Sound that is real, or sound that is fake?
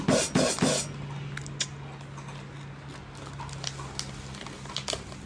real